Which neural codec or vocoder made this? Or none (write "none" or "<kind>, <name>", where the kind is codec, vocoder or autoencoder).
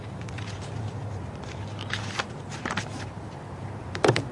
vocoder, BigVGAN v2